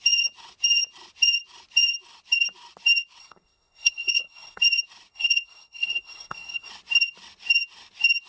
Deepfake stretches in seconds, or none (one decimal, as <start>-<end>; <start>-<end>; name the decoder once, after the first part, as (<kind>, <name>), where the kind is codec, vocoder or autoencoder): 3.2-4.6 (codec, SNAC); 5.1-6.7